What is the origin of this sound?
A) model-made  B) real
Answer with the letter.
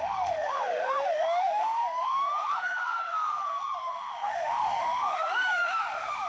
A